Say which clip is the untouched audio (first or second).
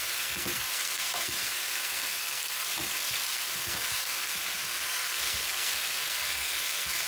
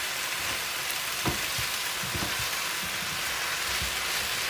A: second